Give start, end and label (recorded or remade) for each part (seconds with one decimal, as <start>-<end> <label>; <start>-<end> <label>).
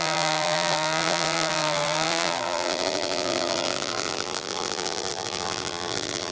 0.0-6.3 remade